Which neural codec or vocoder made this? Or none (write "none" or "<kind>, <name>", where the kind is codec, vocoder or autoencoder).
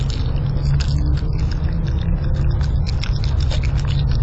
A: none